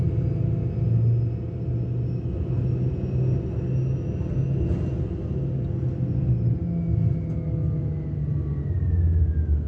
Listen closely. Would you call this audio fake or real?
real